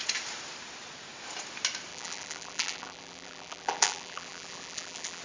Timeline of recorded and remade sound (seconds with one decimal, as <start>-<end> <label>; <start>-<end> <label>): 0.0-1.9 recorded; 1.9-5.2 remade